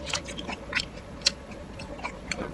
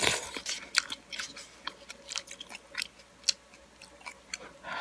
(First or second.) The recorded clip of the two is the second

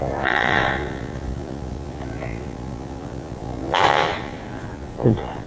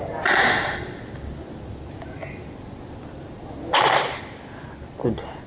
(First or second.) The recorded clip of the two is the second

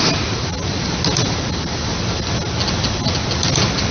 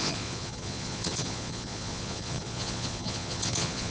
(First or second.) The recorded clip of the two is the first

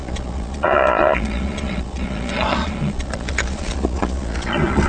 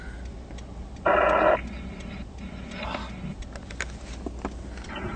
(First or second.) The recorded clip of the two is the second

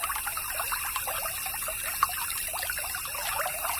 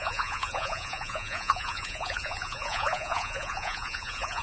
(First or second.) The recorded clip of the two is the first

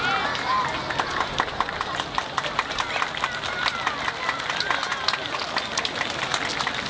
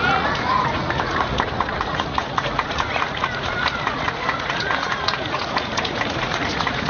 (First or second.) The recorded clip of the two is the first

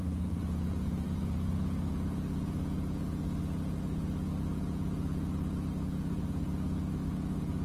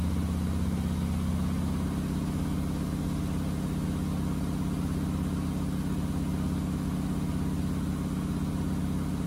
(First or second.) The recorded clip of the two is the second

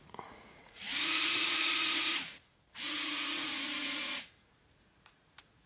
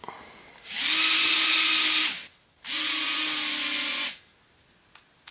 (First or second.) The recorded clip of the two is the second